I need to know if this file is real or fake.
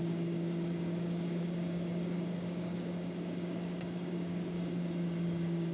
fake